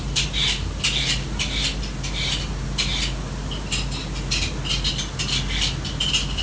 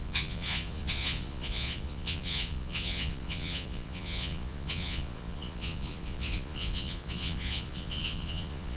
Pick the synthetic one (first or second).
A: second